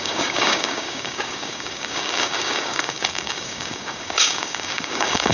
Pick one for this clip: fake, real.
fake